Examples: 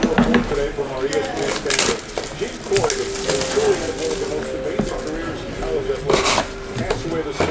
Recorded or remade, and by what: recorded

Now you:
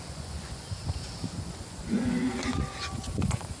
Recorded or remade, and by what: remade, vocoder, Vocos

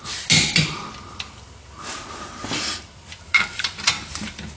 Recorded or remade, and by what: recorded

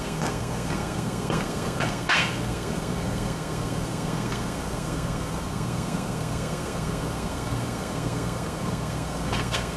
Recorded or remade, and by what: remade, codec, SNAC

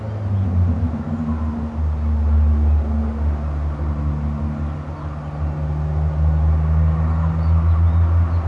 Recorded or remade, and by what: recorded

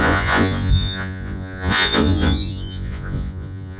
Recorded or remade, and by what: remade, vocoder, Vocos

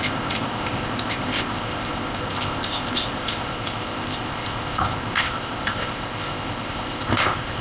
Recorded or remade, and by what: remade, codec, ZipCodec